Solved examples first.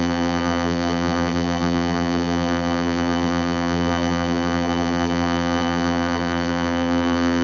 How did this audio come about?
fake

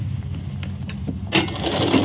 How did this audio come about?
real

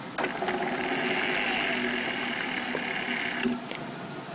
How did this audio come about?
real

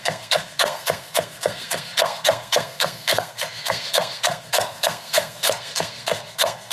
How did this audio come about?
fake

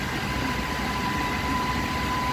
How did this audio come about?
fake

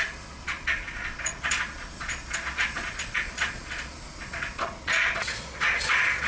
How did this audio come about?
fake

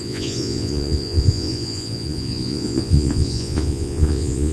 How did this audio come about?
fake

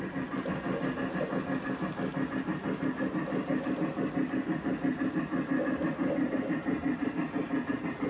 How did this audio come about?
real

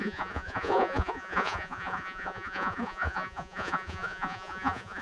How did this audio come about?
fake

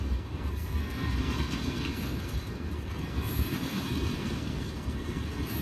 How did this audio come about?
fake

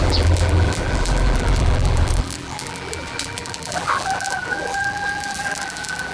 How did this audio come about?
fake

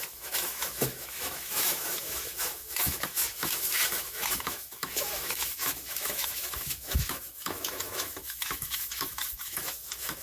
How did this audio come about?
fake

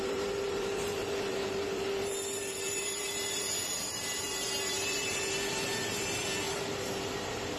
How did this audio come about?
fake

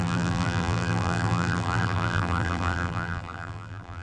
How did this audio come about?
fake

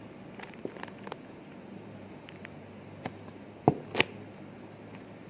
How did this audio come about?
real